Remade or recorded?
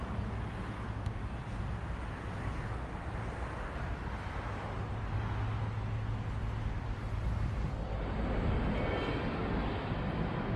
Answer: recorded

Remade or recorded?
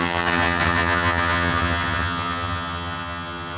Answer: remade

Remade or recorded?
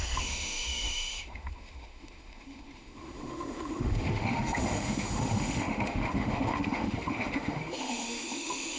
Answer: remade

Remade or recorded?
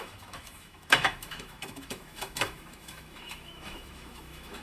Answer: remade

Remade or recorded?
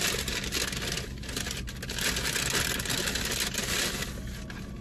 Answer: recorded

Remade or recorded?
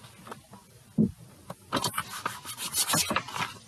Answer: recorded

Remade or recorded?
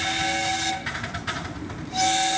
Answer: recorded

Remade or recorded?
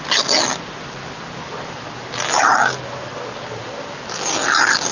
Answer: recorded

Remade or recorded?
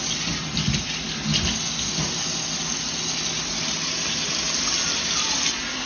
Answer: recorded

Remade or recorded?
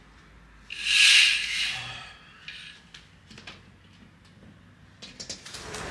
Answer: recorded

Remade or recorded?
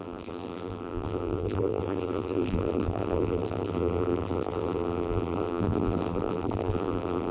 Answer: remade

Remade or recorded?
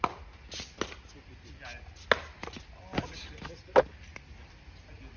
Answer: recorded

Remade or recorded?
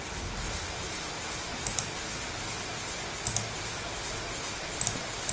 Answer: recorded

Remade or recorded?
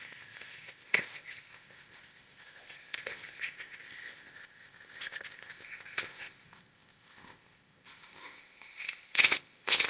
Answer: remade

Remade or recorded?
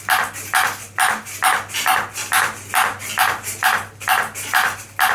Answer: recorded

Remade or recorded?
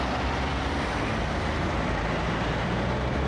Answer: recorded